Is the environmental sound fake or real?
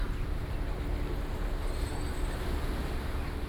real